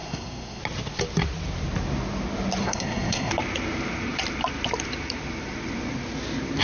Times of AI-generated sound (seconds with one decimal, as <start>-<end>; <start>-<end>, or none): 0.0-0.6; 2.6-3.3